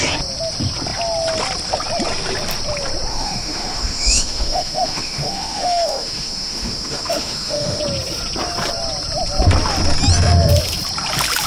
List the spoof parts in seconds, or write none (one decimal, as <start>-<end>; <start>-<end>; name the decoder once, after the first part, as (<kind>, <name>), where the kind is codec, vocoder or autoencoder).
3.1-7.8 (autoencoder, DAC-VAE)